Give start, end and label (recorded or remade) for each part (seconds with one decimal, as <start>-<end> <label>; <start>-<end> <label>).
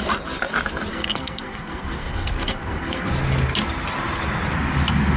0.0-0.9 recorded; 0.9-3.1 remade; 3.1-5.2 recorded